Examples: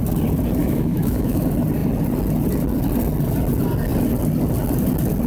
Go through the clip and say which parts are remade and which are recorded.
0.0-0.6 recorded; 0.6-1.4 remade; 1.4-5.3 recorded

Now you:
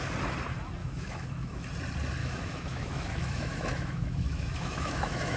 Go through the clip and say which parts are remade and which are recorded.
0.0-0.8 recorded; 0.8-1.7 remade; 1.7-2.2 recorded; 2.2-5.4 remade

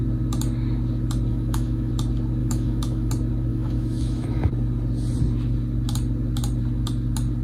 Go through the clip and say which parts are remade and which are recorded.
0.0-1.3 recorded; 1.3-1.9 remade; 1.9-2.4 recorded; 2.4-3.1 remade; 3.1-3.5 recorded; 3.5-4.5 remade; 4.5-7.4 recorded

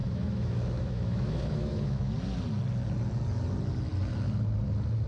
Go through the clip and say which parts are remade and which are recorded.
0.0-2.1 remade; 2.1-5.1 recorded

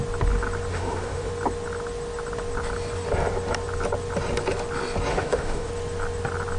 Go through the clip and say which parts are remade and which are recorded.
0.0-0.7 recorded; 0.7-1.3 remade; 1.3-5.1 recorded; 5.1-5.7 remade; 5.7-6.6 recorded